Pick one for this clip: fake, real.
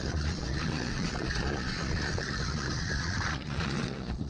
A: fake